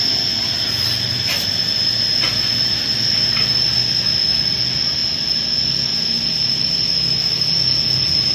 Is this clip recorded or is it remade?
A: recorded